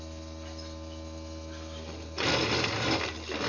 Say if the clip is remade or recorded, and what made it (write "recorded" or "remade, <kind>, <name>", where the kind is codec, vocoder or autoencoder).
recorded